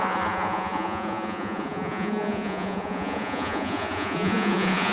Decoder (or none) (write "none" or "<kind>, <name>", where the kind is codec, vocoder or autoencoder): vocoder, Vocos